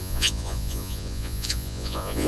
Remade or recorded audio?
remade